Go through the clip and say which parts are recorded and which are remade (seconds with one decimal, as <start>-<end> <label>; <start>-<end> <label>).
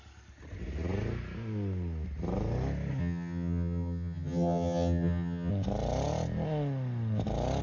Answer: 0.0-3.0 recorded; 3.0-5.5 remade; 5.5-7.6 recorded